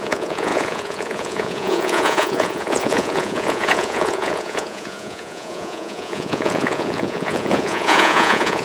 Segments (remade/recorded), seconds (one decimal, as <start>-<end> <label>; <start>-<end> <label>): 0.0-8.6 remade